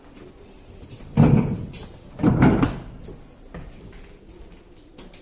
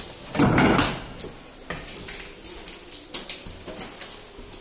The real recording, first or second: second